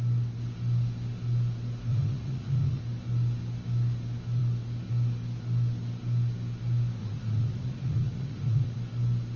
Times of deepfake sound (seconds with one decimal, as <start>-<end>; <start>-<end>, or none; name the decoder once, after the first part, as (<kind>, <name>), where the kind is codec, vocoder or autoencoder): 1.9-2.8 (vocoder, Vocos); 7.0-8.8